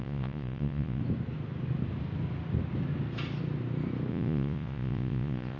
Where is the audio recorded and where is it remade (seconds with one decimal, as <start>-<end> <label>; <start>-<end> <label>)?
0.0-1.0 remade; 1.0-4.1 recorded; 4.1-5.6 remade